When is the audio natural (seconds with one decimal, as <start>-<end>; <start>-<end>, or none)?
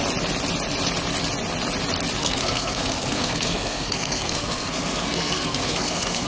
0.0-2.2